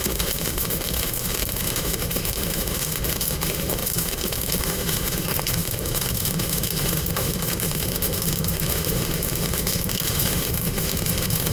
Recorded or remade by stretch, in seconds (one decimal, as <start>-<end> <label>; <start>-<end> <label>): 0.0-11.5 remade